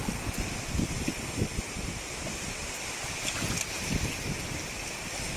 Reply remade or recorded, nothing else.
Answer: recorded